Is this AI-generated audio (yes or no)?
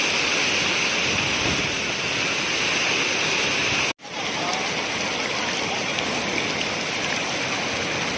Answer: no